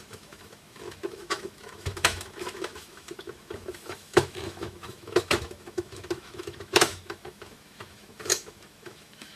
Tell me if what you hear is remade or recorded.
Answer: remade